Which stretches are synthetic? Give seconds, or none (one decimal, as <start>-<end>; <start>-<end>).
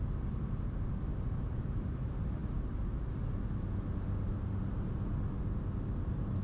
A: none